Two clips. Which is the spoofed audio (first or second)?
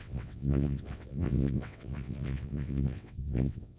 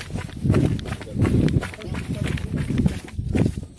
first